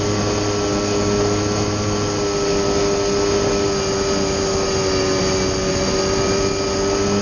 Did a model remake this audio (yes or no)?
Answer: no